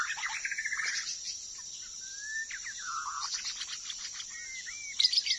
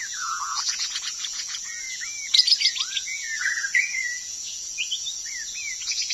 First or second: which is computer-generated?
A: second